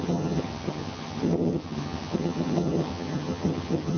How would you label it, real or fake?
fake